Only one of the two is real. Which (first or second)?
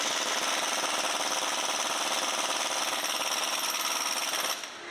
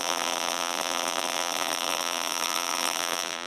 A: first